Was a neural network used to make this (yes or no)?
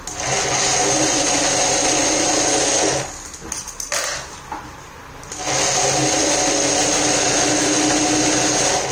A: no